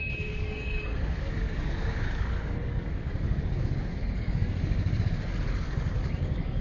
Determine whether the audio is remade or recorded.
remade